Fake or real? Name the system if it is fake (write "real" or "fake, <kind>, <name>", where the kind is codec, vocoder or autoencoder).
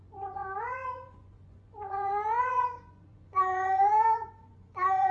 fake, vocoder, Vocos